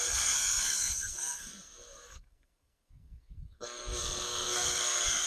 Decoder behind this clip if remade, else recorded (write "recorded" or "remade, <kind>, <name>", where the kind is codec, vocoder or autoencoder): remade, codec, SNAC